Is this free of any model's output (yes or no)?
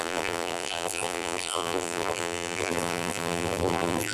no